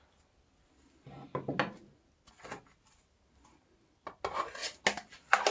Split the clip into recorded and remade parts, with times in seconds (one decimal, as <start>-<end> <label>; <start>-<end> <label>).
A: 0.0-5.5 recorded